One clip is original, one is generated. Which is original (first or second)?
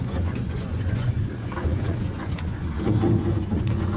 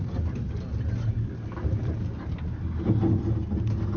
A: second